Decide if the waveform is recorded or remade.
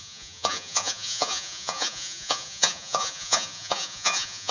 remade